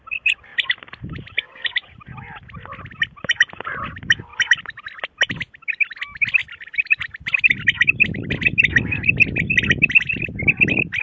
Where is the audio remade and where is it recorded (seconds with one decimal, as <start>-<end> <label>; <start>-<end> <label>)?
0.0-6.4 recorded; 6.4-7.4 remade; 7.4-11.0 recorded